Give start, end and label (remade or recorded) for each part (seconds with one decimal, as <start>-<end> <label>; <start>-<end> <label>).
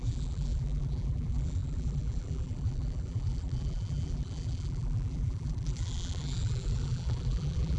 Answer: 0.0-7.8 remade